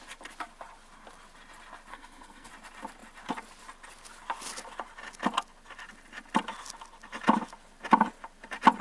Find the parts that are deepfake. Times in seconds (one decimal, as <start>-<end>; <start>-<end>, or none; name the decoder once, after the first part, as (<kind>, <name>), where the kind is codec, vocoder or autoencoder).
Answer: 1.9-2.5 (codec, SNAC)